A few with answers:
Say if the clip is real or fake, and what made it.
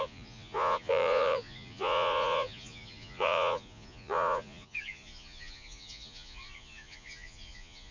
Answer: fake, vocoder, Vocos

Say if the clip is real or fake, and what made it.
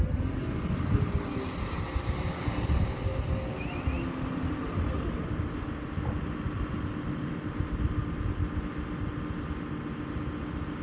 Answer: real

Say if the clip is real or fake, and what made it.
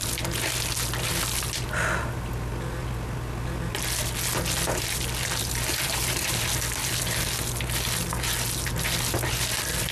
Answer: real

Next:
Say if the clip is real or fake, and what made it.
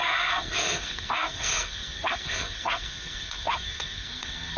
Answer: fake, codec, SNAC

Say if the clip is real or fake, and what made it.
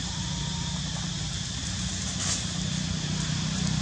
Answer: fake, vocoder, BigVGAN v2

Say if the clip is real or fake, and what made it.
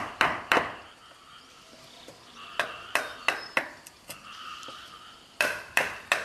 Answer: fake, vocoder, BigVGAN v2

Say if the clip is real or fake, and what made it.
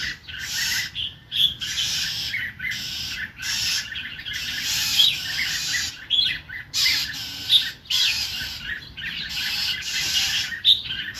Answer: real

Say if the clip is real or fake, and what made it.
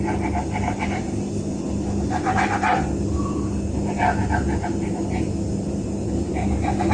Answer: real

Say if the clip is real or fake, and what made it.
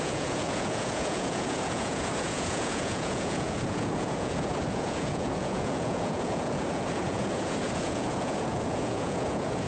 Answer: fake, vocoder, Vocos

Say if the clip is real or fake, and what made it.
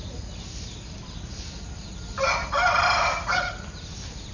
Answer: real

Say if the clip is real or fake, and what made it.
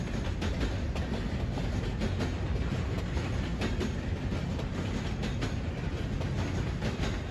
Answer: real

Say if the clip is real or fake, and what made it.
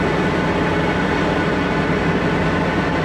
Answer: real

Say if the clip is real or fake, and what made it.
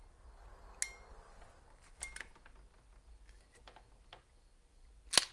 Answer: real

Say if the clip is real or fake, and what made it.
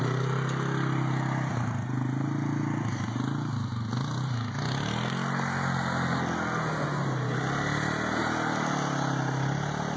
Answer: real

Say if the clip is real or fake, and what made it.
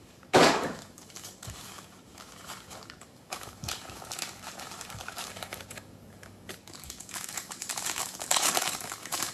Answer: fake, codec, DAC